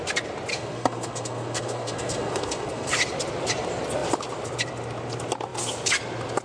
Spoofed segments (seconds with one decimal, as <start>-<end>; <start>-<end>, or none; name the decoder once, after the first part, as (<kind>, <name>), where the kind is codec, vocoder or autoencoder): 0.5-2.9 (codec, SNAC)